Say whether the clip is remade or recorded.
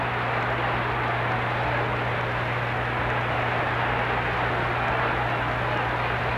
recorded